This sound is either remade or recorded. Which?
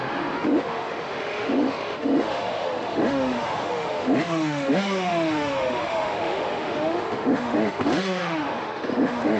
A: remade